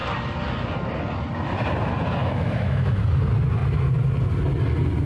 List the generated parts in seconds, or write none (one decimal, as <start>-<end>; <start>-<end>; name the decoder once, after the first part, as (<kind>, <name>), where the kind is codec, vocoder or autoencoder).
2.2-3.0 (autoencoder, DAC-VAE)